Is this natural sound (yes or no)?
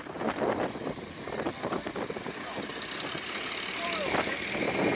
yes